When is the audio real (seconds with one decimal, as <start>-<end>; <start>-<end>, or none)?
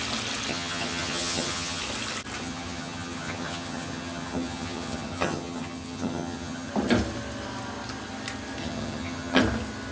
0.0-0.5; 1.8-2.4; 6.7-8.6; 9.4-9.9